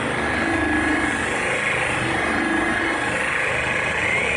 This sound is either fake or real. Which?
real